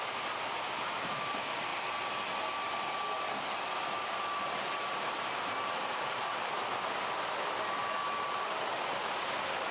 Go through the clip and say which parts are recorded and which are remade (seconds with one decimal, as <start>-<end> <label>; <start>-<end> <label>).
0.0-1.7 remade; 1.7-6.4 recorded; 6.4-9.7 remade